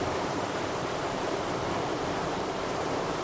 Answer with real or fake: fake